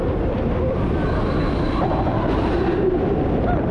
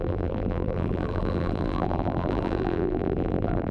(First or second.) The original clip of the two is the first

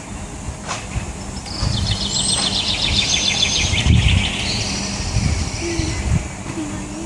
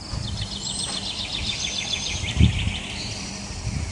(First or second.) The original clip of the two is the first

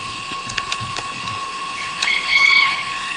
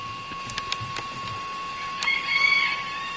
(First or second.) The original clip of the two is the second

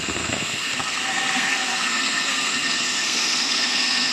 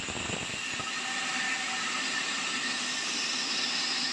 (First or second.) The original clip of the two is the second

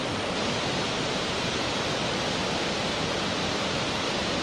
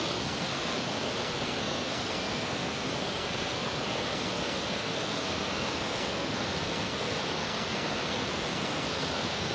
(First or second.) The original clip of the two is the first